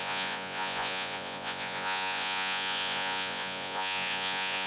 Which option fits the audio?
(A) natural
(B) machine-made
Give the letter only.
B